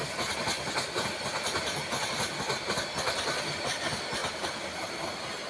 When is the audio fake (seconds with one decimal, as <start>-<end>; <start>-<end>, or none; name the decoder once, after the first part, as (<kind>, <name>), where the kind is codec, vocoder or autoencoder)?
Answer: none